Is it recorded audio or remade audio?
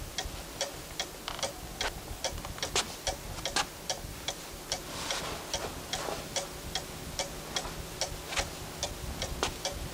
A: recorded